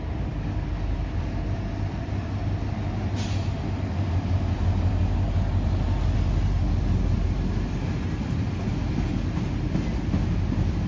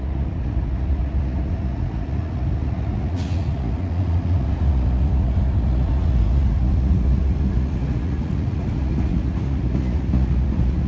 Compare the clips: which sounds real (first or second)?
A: first